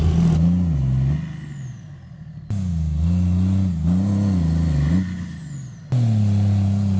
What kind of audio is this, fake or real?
real